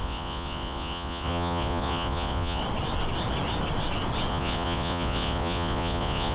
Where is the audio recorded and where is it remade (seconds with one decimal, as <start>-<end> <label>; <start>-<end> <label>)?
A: 0.0-2.6 remade; 2.6-4.3 recorded; 4.3-6.3 remade